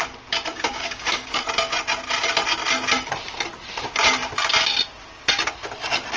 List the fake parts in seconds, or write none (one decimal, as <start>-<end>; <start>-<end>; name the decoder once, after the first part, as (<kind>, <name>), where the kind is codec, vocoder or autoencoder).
0.5-1.4 (codec, DAC)